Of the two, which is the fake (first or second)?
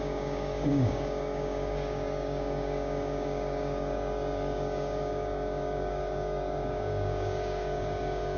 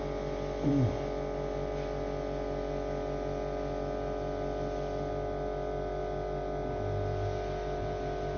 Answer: first